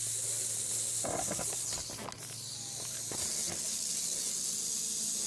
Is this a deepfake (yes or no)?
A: no